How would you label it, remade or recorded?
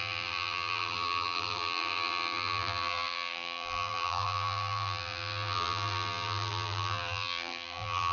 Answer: remade